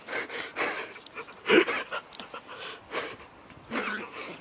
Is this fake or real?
real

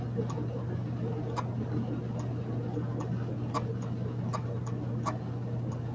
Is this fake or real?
real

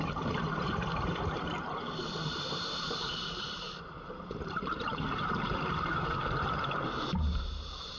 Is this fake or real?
fake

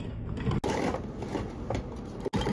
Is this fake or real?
real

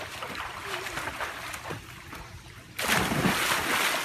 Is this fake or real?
real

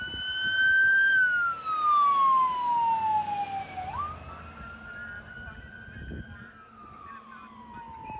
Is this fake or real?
real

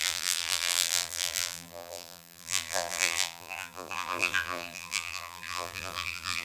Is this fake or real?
fake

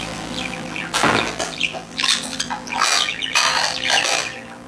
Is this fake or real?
fake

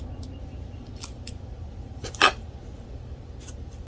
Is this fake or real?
fake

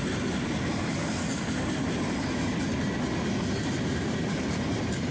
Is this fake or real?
real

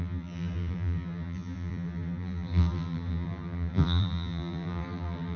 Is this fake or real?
fake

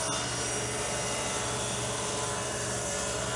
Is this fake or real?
fake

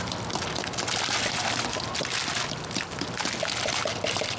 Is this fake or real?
real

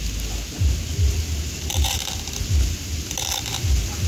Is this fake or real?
real